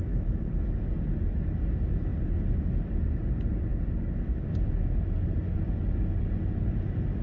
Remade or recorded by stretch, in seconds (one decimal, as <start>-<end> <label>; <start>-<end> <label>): 0.0-7.2 recorded